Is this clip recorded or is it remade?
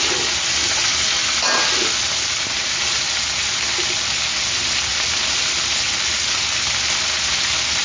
recorded